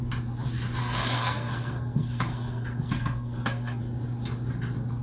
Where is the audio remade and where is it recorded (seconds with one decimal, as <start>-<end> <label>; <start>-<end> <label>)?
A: 0.0-0.8 recorded; 0.8-3.8 remade; 3.8-5.0 recorded